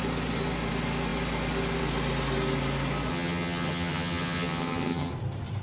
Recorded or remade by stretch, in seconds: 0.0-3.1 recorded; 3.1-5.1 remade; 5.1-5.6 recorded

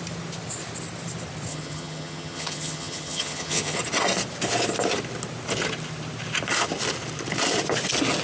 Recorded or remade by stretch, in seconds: 0.0-1.5 recorded; 1.5-3.8 remade; 3.8-8.2 recorded